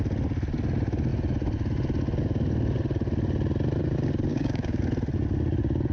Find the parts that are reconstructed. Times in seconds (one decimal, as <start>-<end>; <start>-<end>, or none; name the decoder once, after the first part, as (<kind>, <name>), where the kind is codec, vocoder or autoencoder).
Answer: 4.3-4.8 (codec, DAC)